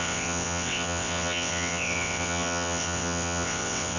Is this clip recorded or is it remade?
remade